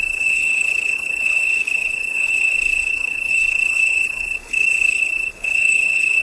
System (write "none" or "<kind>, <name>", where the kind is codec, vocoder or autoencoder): codec, HILCodec